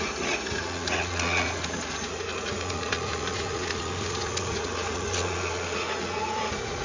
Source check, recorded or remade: remade